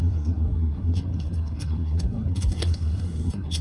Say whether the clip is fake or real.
fake